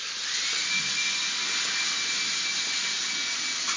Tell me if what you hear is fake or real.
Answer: real